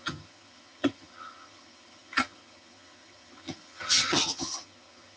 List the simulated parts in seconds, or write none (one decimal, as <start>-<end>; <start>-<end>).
0.0-5.2